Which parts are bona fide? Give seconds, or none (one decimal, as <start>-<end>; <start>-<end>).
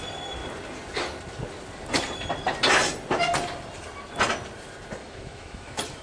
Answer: 0.0-5.0